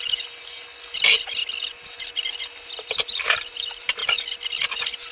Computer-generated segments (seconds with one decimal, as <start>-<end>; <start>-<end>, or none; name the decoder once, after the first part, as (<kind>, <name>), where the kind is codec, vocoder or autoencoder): none